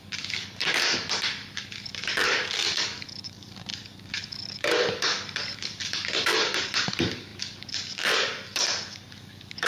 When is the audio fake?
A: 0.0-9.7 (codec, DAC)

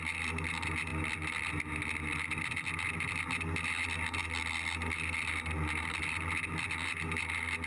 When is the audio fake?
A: none

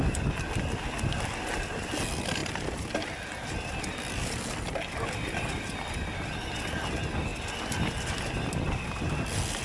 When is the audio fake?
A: none

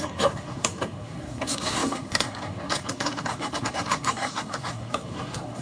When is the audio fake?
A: 0.0-5.6 (codec, SNAC)

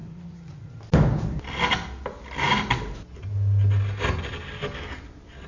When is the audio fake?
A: 0.0-0.7 (vocoder, Vocos)

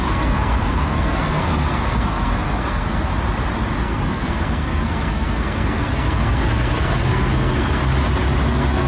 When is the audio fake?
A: 0.0-3.1 (codec, SNAC); 3.8-7.8; 8.5-8.9

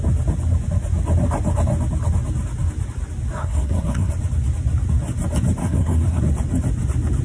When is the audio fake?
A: 3.4-4.1 (codec, SNAC); 5.6-6.2